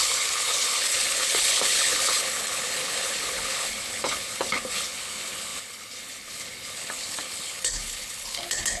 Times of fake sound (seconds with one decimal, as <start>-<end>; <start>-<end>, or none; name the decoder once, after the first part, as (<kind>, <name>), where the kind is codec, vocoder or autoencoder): 0.0-8.8 (codec, HILCodec)